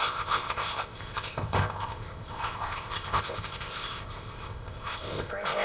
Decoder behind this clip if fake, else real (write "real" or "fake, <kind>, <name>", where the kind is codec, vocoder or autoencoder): fake, codec, ZipCodec